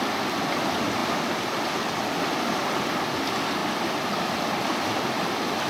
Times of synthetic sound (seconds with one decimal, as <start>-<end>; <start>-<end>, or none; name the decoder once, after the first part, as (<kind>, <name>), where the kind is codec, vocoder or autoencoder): 1.0-2.2 (vocoder, BigVGAN v2); 3.6-4.3